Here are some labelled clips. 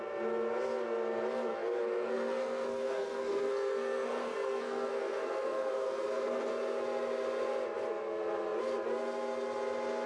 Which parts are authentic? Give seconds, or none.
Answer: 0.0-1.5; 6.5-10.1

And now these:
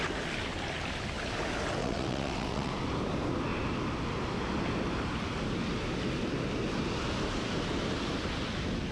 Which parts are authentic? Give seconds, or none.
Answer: 0.0-1.8; 2.7-8.9

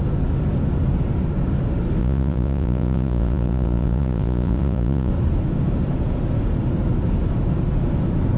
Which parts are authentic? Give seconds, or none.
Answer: 0.0-2.0; 5.1-8.4

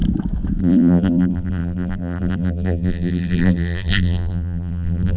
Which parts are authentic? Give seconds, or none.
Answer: 0.0-0.6

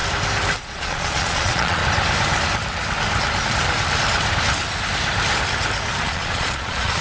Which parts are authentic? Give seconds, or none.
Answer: 0.0-0.6; 1.8-6.0